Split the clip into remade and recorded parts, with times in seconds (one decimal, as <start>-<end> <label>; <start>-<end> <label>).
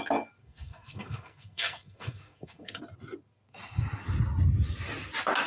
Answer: 0.0-0.4 recorded; 0.4-2.8 remade; 2.8-5.5 recorded